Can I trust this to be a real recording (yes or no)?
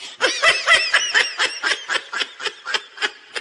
yes